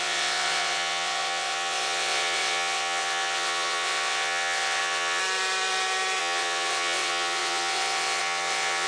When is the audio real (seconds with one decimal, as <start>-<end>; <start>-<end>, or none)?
5.2-6.2